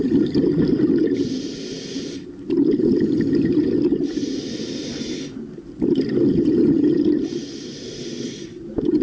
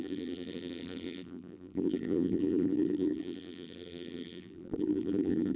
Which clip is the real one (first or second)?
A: first